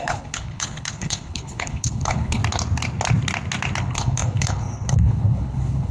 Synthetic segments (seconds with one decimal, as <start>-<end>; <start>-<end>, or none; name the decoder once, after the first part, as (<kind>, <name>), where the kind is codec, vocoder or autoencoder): 0.0-2.4 (codec, HILCodec); 3.8-5.9